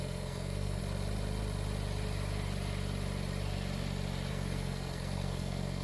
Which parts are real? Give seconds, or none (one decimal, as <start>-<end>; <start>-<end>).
0.8-4.3